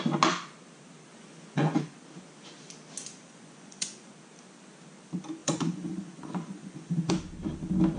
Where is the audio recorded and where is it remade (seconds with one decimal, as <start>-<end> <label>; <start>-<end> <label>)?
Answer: 0.0-1.1 recorded; 1.1-2.0 remade; 2.0-3.0 recorded; 3.0-4.1 remade; 4.1-5.4 recorded; 5.4-7.1 remade; 7.1-8.0 recorded